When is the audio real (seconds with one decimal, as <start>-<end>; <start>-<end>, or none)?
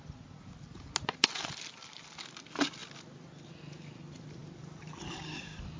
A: 0.0-5.8